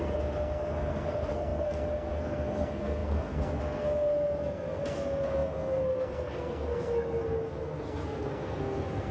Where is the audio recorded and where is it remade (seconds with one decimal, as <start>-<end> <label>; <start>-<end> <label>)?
0.0-9.1 remade